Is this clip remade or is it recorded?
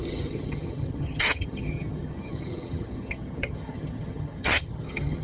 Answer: remade